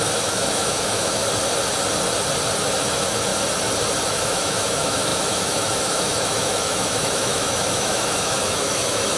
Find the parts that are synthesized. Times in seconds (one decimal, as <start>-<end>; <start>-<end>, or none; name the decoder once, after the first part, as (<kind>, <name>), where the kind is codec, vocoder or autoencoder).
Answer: 0.0-1.2 (autoencoder, DAC-VAE); 2.8-3.3; 4.1-9.2